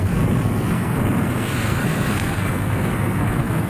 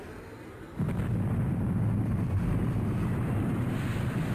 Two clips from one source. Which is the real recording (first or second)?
second